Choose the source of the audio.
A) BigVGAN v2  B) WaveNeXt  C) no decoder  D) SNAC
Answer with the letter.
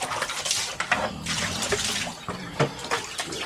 C